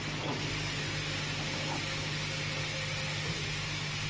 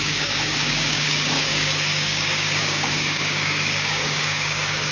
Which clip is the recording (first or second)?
first